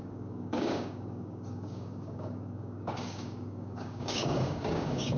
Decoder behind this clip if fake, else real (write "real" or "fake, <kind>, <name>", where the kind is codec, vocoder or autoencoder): fake, codec, DAC